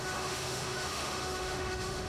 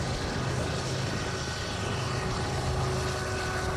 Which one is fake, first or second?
first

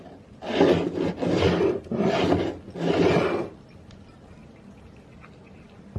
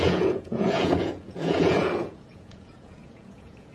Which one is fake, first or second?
second